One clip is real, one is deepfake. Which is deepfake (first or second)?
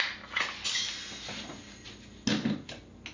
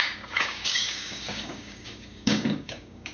second